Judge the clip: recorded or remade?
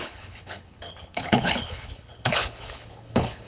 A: remade